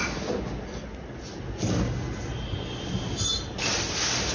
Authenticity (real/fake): real